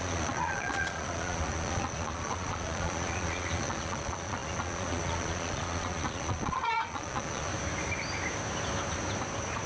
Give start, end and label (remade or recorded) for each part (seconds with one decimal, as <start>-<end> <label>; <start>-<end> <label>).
0.0-7.5 remade; 7.5-9.7 recorded